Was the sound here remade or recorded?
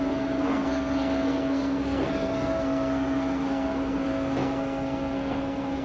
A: remade